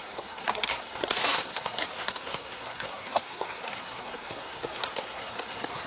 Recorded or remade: remade